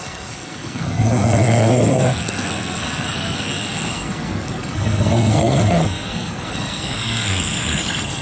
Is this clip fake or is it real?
fake